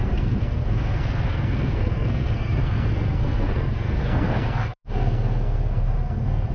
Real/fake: fake